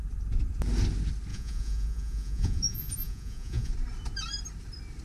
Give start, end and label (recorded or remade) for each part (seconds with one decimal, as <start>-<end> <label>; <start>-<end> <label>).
0.0-1.3 recorded; 1.3-3.7 remade; 3.7-5.0 recorded

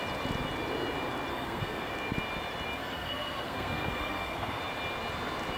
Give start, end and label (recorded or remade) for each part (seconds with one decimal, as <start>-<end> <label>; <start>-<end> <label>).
0.0-1.3 recorded; 1.3-1.9 remade; 1.9-2.8 recorded; 2.8-4.6 remade; 4.6-5.6 recorded

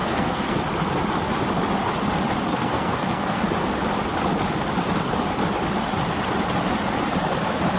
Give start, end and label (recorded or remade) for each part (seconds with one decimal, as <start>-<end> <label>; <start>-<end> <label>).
0.0-0.6 remade; 0.6-2.5 recorded; 2.5-3.4 remade; 3.4-7.8 recorded

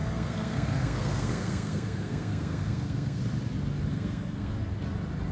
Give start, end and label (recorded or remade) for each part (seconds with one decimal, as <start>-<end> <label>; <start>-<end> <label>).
0.0-3.2 remade; 3.2-3.9 recorded; 3.9-4.6 remade; 4.6-5.3 recorded